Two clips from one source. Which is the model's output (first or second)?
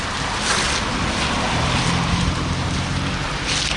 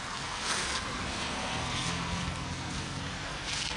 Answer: second